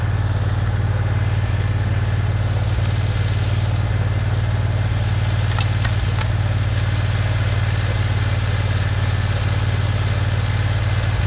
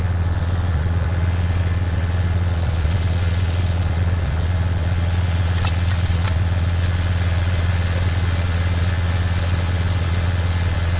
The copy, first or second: second